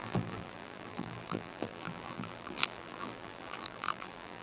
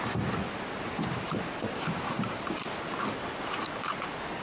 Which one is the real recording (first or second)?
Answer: second